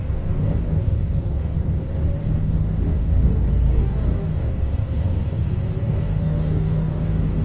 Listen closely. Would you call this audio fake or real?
fake